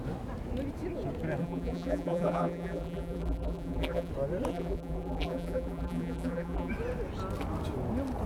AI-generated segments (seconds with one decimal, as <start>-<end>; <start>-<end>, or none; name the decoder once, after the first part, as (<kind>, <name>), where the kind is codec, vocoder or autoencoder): 1.4-4.1 (vocoder, BigVGAN v2); 4.5-6.7